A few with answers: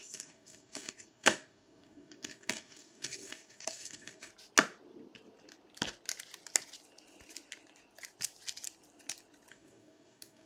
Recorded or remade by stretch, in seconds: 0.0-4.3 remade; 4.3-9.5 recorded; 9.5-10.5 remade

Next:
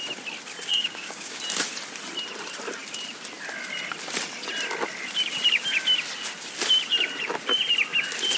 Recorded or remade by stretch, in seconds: 0.0-0.7 recorded; 0.7-1.4 remade; 1.4-8.4 recorded